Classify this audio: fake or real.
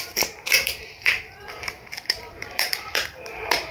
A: fake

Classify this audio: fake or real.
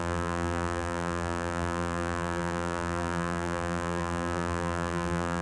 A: fake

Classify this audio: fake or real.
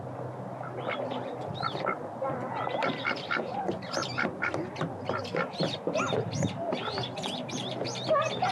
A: real